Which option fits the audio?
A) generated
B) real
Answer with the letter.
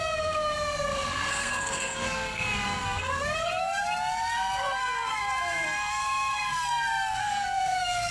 A